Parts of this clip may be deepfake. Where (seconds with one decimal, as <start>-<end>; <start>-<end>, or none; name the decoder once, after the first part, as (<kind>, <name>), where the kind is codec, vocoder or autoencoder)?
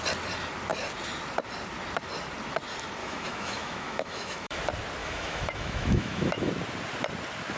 3.0-4.6 (autoencoder, DAC-VAE); 5.0-6.5